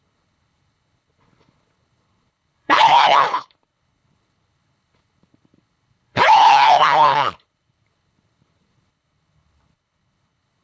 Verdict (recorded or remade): remade